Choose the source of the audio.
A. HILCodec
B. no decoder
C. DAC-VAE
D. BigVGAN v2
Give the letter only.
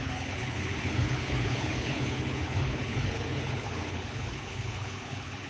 A